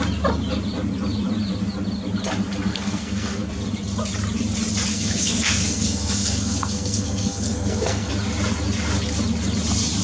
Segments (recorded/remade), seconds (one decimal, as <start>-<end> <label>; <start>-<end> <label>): 0.0-2.7 recorded; 2.7-3.5 remade; 3.5-4.9 recorded; 4.9-8.1 remade; 8.1-10.0 recorded